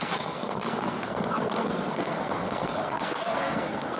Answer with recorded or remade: remade